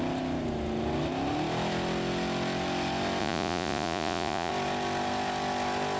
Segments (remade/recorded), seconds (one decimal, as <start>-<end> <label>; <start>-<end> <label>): 0.0-3.2 recorded; 3.2-4.5 remade; 4.5-6.0 recorded